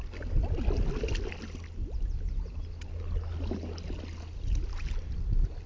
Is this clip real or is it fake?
real